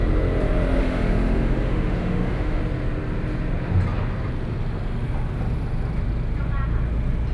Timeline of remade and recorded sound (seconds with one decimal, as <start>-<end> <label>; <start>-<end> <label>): 0.0-0.8 recorded; 0.8-2.6 remade; 2.6-7.3 recorded